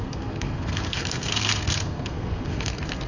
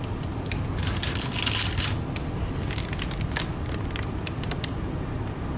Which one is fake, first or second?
first